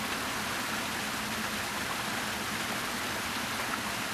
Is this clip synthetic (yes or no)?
no